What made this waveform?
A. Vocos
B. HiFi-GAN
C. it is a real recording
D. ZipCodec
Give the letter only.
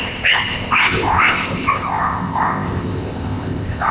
D